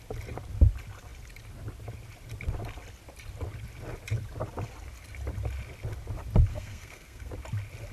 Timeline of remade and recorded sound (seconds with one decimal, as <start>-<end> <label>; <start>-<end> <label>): 0.0-6.5 recorded; 6.5-7.3 remade; 7.3-7.9 recorded